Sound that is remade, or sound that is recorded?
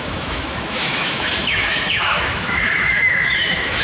remade